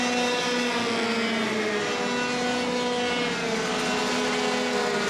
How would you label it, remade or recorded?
recorded